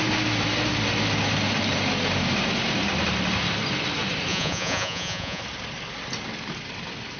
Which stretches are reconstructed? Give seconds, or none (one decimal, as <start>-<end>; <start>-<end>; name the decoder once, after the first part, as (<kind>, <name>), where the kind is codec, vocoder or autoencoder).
4.3-5.4 (vocoder, Vocos)

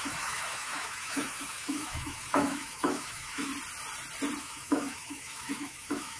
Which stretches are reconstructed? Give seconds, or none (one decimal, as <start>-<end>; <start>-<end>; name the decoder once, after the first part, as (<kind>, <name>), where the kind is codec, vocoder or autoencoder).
0.0-3.5 (autoencoder, DAC-VAE); 4.4-6.2